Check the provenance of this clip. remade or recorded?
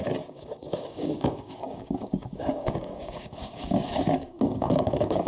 remade